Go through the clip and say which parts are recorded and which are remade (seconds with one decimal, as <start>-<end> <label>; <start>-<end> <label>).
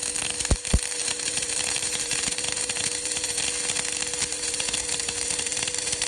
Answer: 0.0-1.0 recorded; 1.0-3.4 remade; 3.4-4.3 recorded; 4.3-6.1 remade